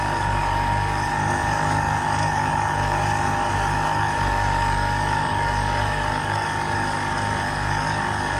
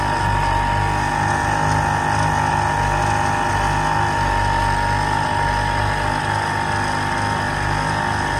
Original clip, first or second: second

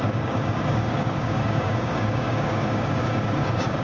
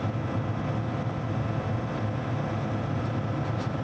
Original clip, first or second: second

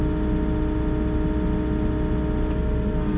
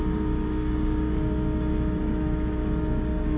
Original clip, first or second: first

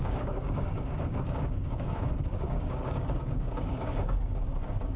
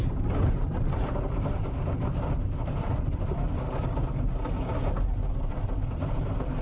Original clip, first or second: second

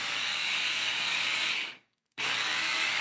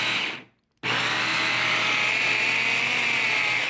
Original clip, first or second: second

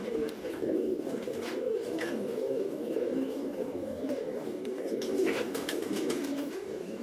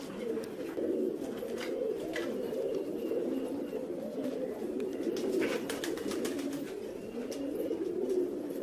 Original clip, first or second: second